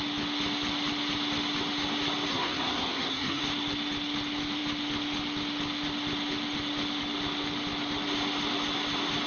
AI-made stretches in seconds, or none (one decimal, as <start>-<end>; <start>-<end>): 2.3-3.4